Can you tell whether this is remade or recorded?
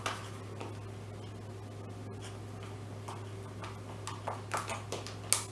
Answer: recorded